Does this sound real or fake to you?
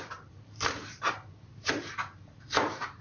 fake